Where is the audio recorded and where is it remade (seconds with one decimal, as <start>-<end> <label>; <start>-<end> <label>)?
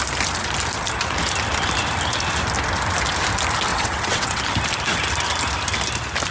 0.0-3.7 recorded; 3.7-4.4 remade; 4.4-6.3 recorded